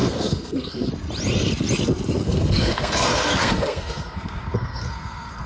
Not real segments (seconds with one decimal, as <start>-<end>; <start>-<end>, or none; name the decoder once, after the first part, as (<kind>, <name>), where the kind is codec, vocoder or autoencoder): 0.0-0.9 (codec, SNAC); 2.2-5.5